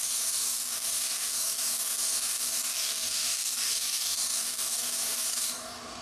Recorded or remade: remade